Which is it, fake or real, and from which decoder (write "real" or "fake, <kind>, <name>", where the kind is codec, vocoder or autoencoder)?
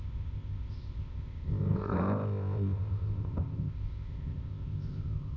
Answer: fake, codec, ZipCodec